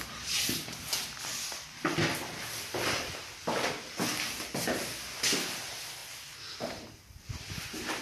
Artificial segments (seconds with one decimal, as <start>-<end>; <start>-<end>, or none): none